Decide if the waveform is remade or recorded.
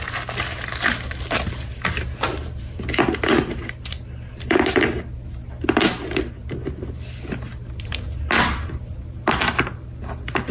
recorded